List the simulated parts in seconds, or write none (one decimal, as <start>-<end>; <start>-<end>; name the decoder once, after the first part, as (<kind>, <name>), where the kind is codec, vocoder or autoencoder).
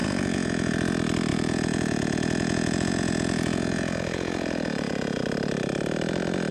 0.0-0.7 (vocoder, Vocos); 1.3-5.2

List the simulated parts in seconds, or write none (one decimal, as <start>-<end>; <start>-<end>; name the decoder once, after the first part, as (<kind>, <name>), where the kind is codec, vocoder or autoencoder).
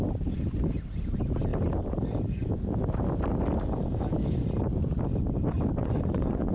5.8-6.5 (vocoder, Vocos)